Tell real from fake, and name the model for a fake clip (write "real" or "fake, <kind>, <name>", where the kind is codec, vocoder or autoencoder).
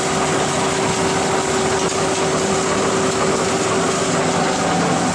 real